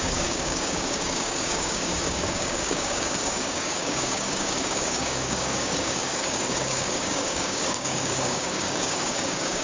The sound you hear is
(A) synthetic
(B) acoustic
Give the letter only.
A